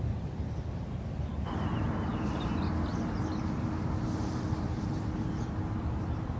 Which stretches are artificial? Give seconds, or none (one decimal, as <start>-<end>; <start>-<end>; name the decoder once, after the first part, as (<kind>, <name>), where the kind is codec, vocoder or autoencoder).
none